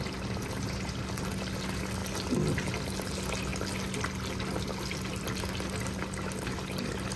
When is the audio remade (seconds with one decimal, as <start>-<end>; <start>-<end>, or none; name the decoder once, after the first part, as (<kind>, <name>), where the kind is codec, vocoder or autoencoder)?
none